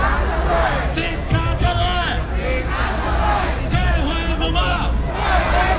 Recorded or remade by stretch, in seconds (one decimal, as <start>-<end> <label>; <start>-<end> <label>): 0.0-5.8 recorded